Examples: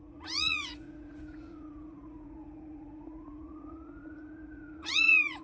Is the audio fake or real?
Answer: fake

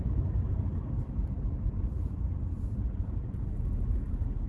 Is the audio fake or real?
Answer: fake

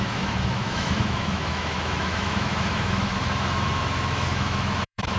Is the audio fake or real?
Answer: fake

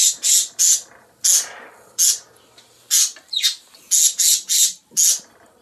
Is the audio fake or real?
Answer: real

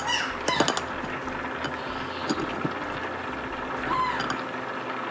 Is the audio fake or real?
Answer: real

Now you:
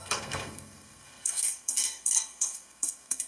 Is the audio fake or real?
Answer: fake